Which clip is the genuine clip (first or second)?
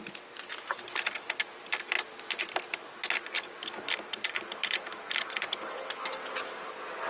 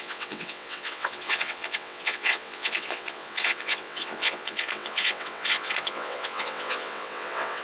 first